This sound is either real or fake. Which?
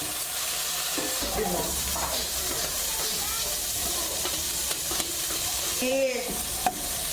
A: fake